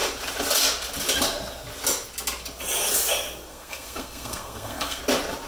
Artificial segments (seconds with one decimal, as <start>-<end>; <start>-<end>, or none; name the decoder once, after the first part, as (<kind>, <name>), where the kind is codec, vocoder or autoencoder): 3.5-5.0 (codec, SNAC)

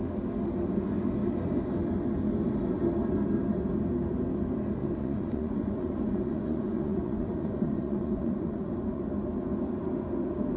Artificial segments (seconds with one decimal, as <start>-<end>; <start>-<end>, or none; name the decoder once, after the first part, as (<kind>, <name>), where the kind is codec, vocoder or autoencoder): 4.8-9.0 (vocoder, Vocos)

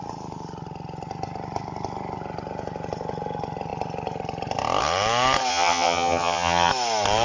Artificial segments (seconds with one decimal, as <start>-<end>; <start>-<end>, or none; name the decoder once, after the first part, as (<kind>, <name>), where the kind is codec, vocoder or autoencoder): 5.5-6.7 (vocoder, HiFi-GAN)

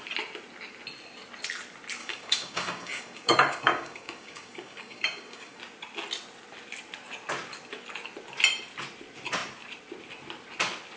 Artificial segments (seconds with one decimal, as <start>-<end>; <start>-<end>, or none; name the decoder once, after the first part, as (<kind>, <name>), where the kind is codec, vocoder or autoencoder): 2.0-5.6 (codec, DAC)

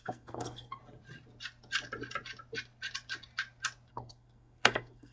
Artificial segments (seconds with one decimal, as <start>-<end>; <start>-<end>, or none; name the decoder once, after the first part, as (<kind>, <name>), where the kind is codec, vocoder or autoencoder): 0.0-0.8 (codec, SNAC); 3.9-5.1

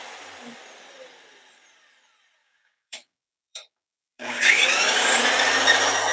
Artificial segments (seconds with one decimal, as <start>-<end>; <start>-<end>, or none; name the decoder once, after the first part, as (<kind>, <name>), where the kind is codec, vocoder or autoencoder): 2.4-5.2 (codec, DAC)

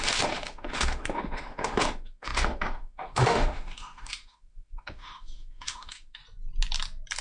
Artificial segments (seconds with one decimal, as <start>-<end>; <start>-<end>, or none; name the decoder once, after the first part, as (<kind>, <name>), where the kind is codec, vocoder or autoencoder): 0.0-6.2 (autoencoder, DAC-VAE)